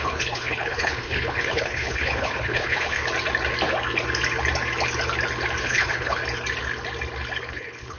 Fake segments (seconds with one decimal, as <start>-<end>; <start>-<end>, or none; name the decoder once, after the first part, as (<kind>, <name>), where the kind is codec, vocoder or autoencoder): 0.0-3.0 (codec, HILCodec); 5.6-6.2; 7.5-8.0